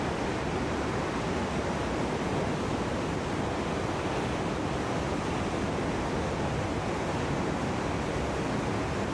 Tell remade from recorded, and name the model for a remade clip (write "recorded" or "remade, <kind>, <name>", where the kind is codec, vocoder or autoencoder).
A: recorded